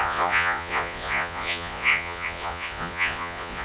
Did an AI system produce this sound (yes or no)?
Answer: yes